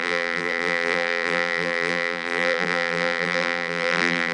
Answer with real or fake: fake